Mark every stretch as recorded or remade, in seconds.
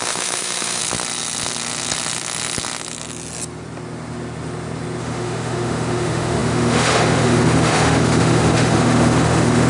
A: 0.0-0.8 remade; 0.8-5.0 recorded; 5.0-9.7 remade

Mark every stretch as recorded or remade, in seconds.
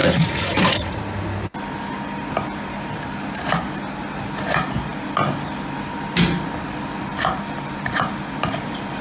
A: 0.0-1.0 remade; 1.0-9.0 recorded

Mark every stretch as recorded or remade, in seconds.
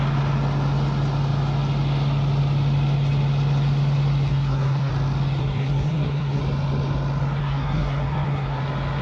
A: 0.0-4.3 recorded; 4.3-4.9 remade; 4.9-5.4 recorded; 5.4-6.4 remade; 6.4-7.4 recorded; 7.4-8.6 remade; 8.6-9.0 recorded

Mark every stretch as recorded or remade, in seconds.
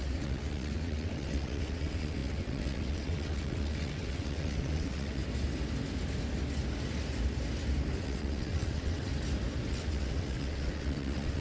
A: 0.0-5.2 remade; 5.2-8.0 recorded; 8.0-9.1 remade; 9.1-9.7 recorded; 9.7-11.4 remade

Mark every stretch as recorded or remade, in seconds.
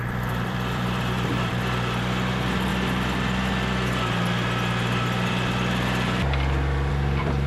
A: 0.0-2.7 remade; 2.7-6.9 recorded; 6.9-7.5 remade